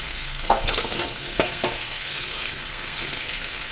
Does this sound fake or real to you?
fake